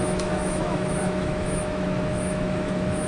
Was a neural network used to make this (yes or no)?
yes